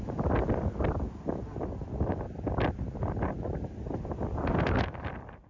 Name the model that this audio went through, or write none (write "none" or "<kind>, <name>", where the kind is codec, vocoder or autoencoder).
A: none